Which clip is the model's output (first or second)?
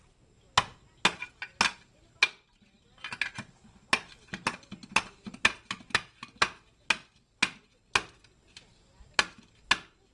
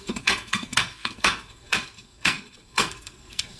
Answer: second